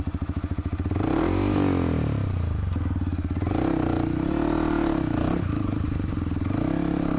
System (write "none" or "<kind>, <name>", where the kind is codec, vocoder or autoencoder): none